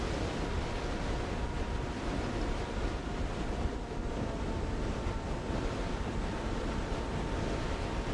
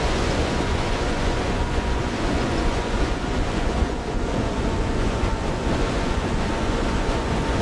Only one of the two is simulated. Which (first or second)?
second